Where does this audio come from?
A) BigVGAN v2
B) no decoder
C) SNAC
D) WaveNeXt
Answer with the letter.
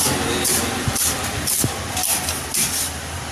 B